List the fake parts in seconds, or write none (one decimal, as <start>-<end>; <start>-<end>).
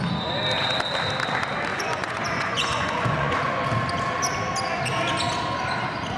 1.7-3.6